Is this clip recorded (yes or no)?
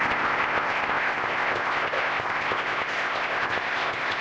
no